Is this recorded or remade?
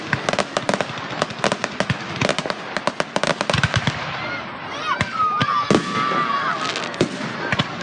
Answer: recorded